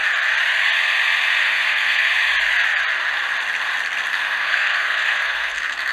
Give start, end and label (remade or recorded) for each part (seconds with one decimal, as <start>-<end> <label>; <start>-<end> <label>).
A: 0.0-1.4 recorded; 1.4-2.1 remade; 2.1-4.1 recorded; 4.1-5.9 remade